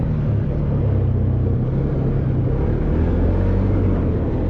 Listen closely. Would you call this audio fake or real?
real